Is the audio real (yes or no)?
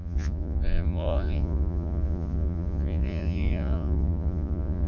no